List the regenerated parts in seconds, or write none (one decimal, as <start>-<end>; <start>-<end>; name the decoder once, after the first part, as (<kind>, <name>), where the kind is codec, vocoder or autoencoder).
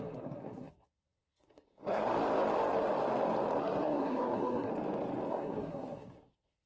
0.0-2.1 (codec, SNAC); 3.6-4.7; 5.3-6.7